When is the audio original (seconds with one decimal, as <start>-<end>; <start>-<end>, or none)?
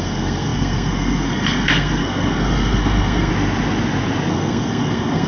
3.3-4.3